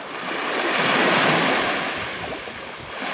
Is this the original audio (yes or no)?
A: yes